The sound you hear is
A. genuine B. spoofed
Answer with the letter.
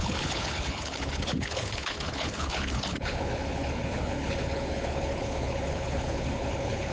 B